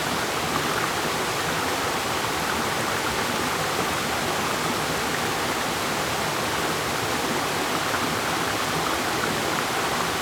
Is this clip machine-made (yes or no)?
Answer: no